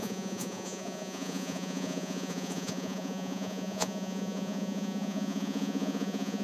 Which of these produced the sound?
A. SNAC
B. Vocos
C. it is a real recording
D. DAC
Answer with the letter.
B